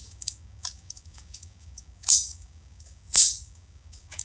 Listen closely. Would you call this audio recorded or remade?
remade